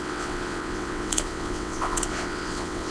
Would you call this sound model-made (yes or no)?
yes